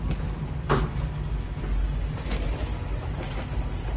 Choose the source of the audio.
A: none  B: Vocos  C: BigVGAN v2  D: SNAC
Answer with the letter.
A